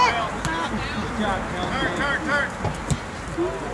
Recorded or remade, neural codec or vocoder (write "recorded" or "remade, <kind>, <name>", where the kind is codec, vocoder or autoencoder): recorded